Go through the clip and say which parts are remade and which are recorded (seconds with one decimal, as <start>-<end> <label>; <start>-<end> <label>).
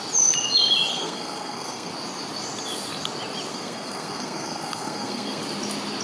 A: 0.0-0.9 recorded; 0.9-1.9 remade; 1.9-3.5 recorded; 3.5-5.4 remade; 5.4-6.0 recorded